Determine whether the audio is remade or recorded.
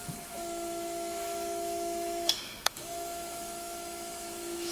remade